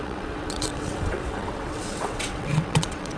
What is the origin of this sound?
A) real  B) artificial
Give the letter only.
B